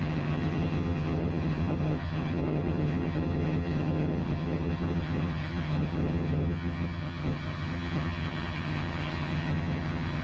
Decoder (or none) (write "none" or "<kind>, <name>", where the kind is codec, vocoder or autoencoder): vocoder, HiFi-GAN